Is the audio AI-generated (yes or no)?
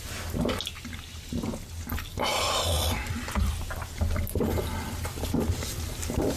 no